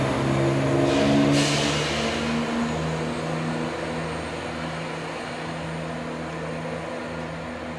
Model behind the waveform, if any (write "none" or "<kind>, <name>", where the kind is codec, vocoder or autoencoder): none